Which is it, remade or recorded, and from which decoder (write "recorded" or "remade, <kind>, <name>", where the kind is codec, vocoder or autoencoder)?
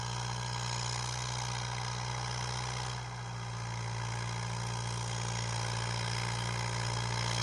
recorded